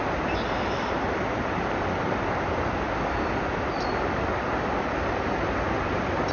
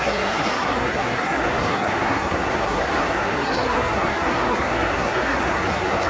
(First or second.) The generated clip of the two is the second